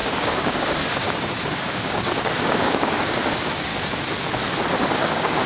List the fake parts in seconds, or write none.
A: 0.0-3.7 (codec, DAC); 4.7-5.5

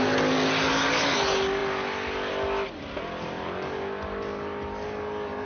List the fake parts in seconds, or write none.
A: none

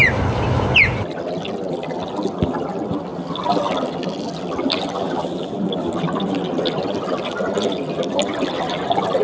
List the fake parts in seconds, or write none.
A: none

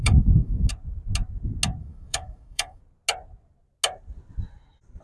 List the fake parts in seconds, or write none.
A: 0.0-0.7 (codec, DAC); 1.8-2.8